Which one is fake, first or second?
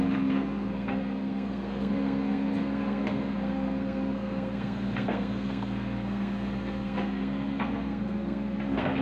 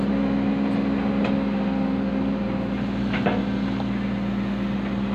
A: first